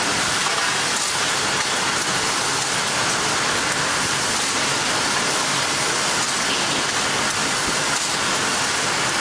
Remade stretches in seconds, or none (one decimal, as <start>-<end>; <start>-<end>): none